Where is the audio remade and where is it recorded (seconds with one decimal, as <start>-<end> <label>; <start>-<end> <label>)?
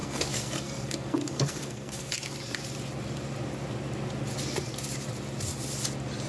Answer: 0.0-2.1 remade; 2.1-6.3 recorded